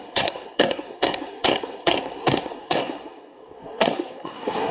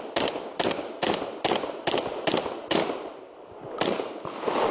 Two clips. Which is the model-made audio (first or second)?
first